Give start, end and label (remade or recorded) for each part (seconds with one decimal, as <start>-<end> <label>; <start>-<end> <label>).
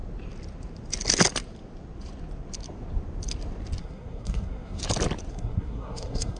0.0-3.8 recorded; 3.8-4.8 remade; 4.8-5.3 recorded; 5.3-6.4 remade